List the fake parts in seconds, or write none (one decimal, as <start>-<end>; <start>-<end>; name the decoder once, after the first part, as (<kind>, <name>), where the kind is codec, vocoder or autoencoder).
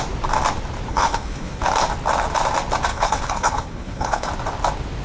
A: 0.9-1.6 (codec, HILCodec); 2.9-4.3